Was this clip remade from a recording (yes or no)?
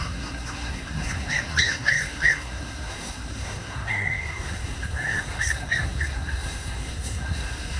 yes